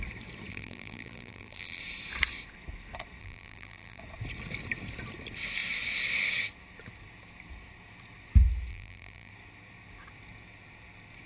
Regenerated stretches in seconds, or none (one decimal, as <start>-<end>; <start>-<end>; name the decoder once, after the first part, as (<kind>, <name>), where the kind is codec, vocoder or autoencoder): 0.5-1.8 (vocoder, BigVGAN v2); 3.2-4.0; 8.7-9.3